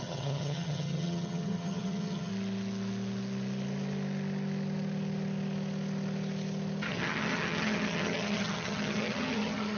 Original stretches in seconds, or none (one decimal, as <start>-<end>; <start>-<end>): 2.3-6.9